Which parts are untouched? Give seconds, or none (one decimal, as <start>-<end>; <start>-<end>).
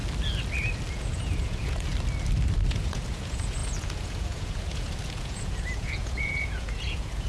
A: 0.0-0.9; 1.9-2.7